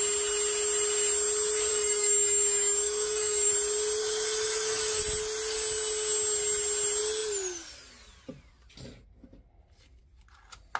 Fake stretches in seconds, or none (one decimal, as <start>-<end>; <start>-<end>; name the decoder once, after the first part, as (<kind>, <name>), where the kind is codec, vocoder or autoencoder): 1.7-3.5 (autoencoder, DAC-VAE); 4.0-5.0